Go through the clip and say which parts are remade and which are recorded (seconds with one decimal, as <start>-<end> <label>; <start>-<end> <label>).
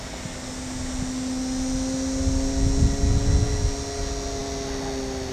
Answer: 0.0-5.3 recorded